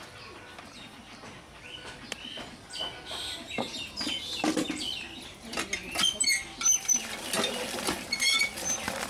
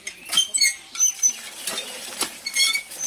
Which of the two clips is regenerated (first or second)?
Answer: second